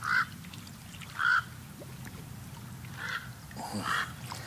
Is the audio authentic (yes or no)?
yes